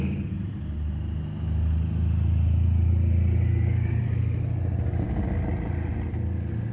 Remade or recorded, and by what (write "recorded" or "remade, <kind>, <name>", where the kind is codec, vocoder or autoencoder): recorded